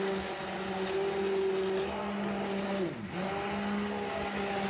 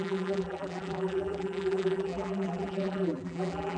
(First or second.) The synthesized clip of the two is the second